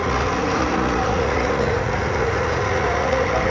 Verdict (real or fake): fake